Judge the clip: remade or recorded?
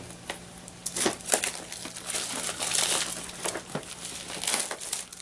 recorded